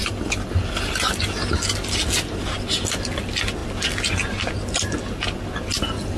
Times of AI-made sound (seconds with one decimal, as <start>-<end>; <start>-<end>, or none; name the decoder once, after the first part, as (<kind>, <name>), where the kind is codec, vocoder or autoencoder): none